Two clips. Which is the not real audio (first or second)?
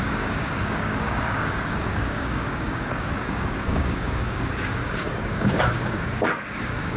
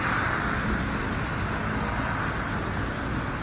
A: first